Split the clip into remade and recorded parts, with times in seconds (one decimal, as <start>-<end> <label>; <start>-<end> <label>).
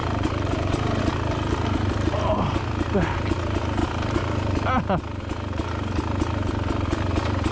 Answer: 0.0-1.0 remade; 1.0-3.8 recorded; 3.8-4.4 remade; 4.4-7.5 recorded